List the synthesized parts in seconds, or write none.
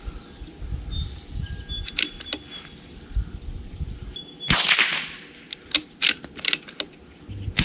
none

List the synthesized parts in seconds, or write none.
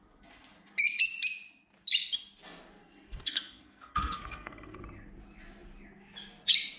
2.8-4.8 (codec, SNAC)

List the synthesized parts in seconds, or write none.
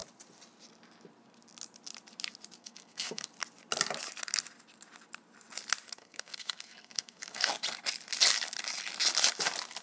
2.6-3.3 (codec, SNAC); 6.0-7.5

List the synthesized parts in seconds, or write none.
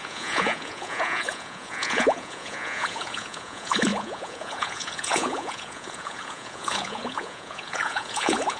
0.0-8.6 (vocoder, Vocos)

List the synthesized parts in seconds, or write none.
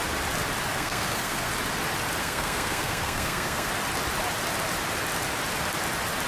0.7-1.5 (codec, SNAC); 2.2-3.7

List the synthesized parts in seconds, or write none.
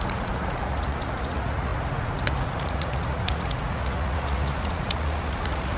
0.0-5.8 (vocoder, Vocos)